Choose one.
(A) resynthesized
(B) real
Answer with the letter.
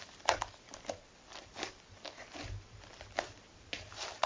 A